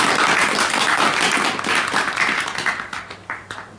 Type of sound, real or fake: real